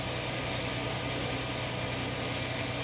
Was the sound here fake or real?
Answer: real